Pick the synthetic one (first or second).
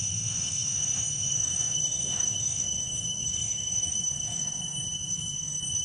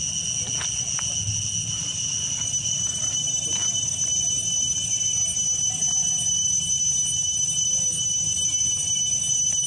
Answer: first